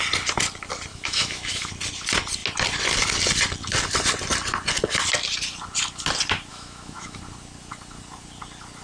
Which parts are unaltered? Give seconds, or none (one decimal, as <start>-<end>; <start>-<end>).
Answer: 0.0-0.9; 1.7-6.5; 7.2-8.8